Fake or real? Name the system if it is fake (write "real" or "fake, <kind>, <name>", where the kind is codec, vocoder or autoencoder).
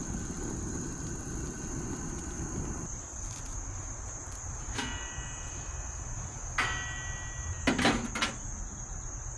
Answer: real